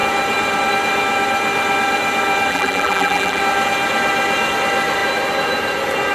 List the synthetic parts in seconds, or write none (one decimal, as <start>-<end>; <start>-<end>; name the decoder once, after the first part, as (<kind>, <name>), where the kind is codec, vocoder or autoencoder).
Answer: 2.5-3.4 (vocoder, BigVGAN v2)